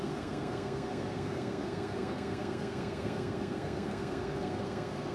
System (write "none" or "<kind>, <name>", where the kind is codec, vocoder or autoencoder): codec, SNAC